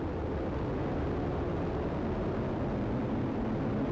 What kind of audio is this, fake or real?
real